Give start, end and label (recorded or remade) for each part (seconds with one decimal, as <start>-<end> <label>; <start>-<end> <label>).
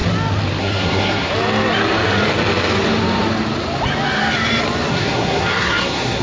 0.0-0.6 recorded; 0.6-1.3 remade; 1.3-4.9 recorded; 4.9-6.2 remade